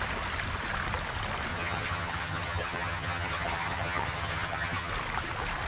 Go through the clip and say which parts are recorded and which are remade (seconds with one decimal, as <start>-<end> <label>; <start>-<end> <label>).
0.0-1.5 recorded; 1.5-4.9 remade; 4.9-5.7 recorded